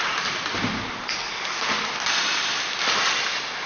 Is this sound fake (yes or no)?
no